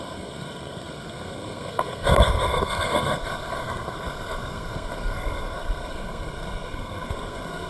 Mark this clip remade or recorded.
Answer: remade